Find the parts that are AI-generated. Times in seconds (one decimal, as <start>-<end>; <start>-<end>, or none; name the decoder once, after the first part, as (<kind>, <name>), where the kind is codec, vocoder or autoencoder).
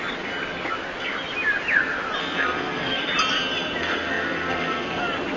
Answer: 2.2-3.1 (codec, SNAC); 3.8-5.0